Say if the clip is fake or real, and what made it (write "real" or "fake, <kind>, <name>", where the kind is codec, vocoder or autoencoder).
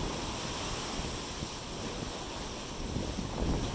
real